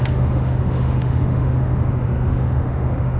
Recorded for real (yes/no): no